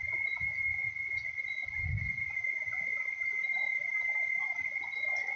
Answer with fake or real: real